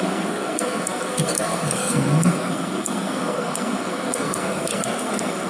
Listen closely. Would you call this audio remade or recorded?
remade